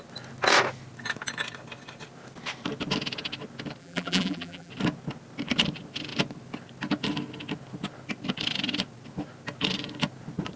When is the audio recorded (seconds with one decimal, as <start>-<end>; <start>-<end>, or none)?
0.0-3.8; 4.7-10.6